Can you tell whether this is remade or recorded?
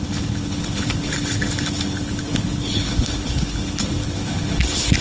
remade